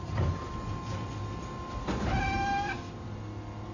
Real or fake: real